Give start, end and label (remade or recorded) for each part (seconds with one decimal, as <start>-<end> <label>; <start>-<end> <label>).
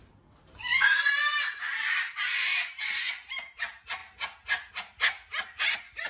0.0-0.9 remade; 0.9-1.8 recorded; 1.8-4.0 remade; 4.0-4.7 recorded; 4.7-6.1 remade